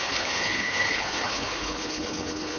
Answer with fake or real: fake